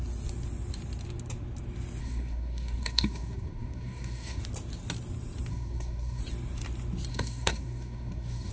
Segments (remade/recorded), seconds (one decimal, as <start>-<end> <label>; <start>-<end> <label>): 0.0-2.0 recorded; 2.0-4.4 remade; 4.4-5.5 recorded; 5.5-6.2 remade; 6.2-7.1 recorded; 7.1-8.5 remade